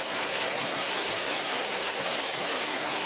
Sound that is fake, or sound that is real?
fake